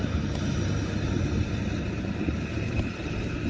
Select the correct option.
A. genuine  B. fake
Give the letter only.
B